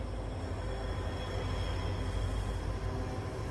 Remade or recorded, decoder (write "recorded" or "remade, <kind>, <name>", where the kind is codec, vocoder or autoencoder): recorded